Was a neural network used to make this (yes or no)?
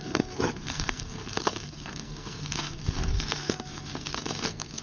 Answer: yes